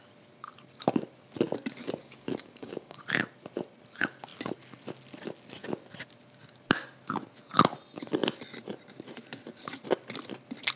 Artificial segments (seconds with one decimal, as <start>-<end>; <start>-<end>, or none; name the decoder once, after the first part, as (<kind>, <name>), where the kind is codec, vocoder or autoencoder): 1.8-3.0 (codec, DAC)